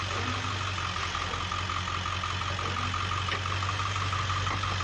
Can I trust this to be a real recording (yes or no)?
yes